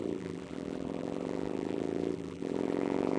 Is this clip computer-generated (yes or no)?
yes